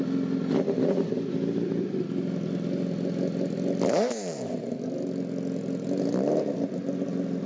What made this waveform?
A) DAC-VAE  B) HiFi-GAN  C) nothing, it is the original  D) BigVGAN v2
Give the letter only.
C